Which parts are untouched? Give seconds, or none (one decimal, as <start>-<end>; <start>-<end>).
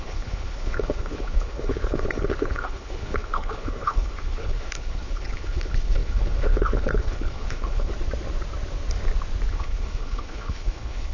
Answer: 7.9-9.5